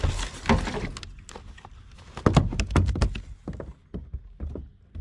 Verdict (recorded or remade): recorded